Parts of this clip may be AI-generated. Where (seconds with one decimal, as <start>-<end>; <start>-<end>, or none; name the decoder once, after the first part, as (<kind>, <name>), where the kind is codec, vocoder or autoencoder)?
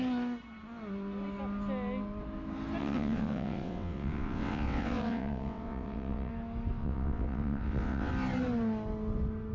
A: 2.8-6.3 (vocoder, WaveNeXt); 6.8-8.1